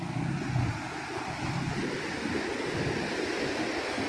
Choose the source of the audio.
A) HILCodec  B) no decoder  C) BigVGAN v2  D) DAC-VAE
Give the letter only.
B